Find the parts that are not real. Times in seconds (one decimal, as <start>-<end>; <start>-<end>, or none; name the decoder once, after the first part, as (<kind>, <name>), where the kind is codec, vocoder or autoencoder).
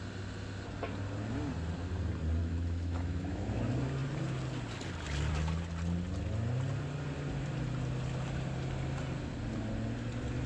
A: 2.4-3.6 (autoencoder, DAC-VAE)